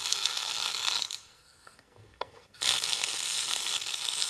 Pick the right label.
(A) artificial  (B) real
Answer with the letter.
A